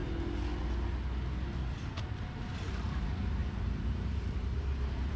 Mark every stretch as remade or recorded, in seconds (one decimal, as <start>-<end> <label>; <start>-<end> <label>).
0.0-2.4 recorded; 2.4-5.2 remade

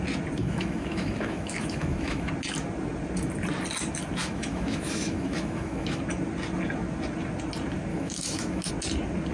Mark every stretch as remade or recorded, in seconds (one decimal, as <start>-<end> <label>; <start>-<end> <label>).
0.0-0.4 recorded; 0.4-2.3 remade; 2.3-4.2 recorded; 4.2-6.0 remade; 6.0-7.9 recorded; 7.9-8.7 remade; 8.7-9.3 recorded

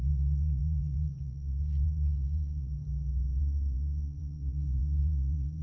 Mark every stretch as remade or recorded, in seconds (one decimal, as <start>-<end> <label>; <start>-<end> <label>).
0.0-2.7 remade; 2.7-3.4 recorded; 3.4-5.6 remade

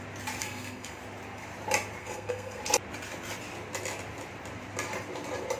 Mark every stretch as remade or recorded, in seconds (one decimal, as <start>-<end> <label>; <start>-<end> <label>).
0.0-0.4 recorded; 0.4-1.0 remade; 1.0-2.0 recorded; 2.0-2.6 remade; 2.6-5.6 recorded

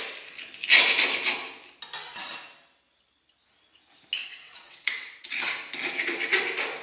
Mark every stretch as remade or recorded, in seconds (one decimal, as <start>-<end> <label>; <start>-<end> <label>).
0.0-4.2 recorded; 4.2-5.3 remade; 5.3-6.8 recorded

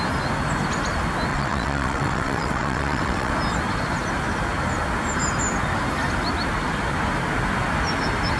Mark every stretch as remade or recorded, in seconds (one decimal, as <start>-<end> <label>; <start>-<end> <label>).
0.0-1.3 recorded; 1.3-3.3 remade; 3.3-8.4 recorded